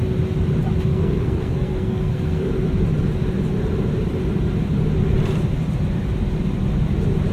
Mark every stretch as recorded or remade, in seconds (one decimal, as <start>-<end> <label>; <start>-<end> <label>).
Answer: 0.0-0.9 recorded; 0.9-2.5 remade; 2.5-7.3 recorded